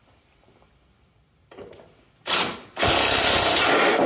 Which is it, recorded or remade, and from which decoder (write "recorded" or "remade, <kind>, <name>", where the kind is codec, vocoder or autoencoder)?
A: recorded